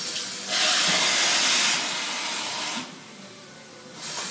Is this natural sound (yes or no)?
yes